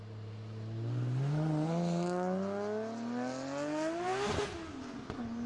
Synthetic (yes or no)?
no